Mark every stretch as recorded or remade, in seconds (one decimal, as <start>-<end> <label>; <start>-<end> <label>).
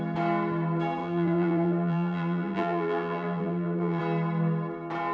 0.0-1.0 recorded; 1.0-4.0 remade; 4.0-5.1 recorded